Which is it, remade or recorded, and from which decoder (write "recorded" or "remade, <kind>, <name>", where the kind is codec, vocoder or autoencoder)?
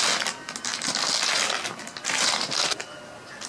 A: recorded